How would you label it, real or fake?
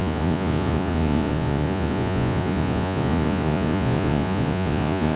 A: fake